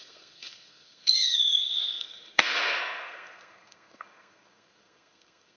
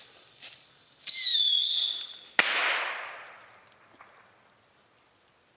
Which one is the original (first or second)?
second